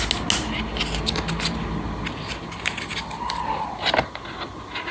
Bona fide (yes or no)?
yes